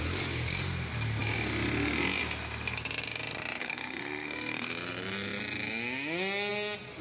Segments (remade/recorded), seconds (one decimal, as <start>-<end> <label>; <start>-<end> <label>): 0.0-3.6 recorded; 3.6-4.7 remade; 4.7-7.0 recorded